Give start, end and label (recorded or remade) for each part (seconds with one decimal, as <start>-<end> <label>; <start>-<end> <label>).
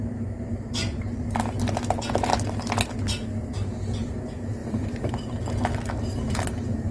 0.0-4.6 recorded; 4.6-5.3 remade; 5.3-6.9 recorded